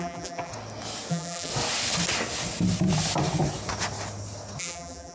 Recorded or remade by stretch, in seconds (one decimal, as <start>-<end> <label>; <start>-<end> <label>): 0.0-0.5 remade; 0.5-1.1 recorded; 1.1-1.5 remade; 1.5-4.6 recorded; 4.6-5.1 remade